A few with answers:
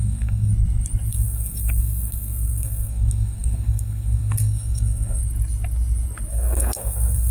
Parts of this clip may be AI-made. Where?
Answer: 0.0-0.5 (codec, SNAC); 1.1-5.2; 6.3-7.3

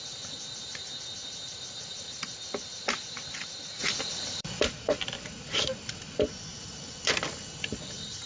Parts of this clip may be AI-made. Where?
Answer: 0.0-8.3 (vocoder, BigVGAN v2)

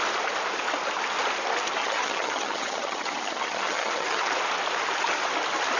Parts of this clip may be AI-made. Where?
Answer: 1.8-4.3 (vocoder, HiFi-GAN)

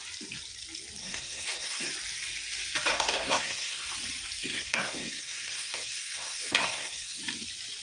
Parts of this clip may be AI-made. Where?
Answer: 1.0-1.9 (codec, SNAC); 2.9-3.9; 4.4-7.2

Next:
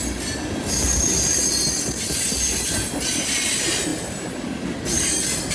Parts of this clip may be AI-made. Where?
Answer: none

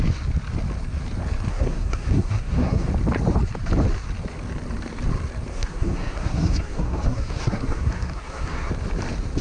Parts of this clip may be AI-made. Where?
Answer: 1.5-2.9 (codec, SNAC); 5.5-8.7